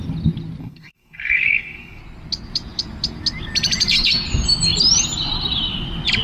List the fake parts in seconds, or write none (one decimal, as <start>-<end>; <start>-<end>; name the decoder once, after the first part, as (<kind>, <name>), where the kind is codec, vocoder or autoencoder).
0.6-2.0 (codec, SNAC)